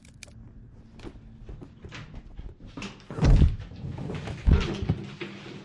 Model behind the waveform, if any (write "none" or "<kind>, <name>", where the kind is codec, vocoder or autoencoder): none